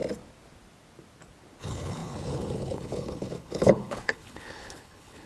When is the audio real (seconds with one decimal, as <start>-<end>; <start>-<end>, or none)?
0.0-1.6